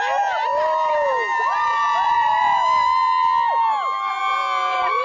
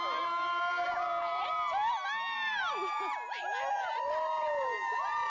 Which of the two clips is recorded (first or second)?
first